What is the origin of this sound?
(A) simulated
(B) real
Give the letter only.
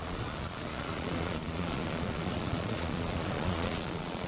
A